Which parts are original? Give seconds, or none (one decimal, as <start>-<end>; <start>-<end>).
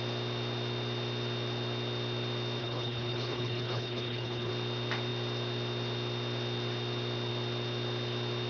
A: 0.0-2.6; 4.5-8.5